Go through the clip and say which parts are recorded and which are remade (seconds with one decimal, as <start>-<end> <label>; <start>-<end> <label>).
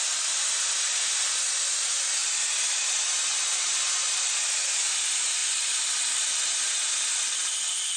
0.0-8.0 recorded